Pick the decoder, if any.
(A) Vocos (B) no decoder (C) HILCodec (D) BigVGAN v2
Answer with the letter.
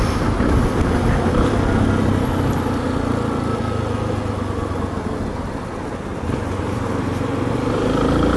B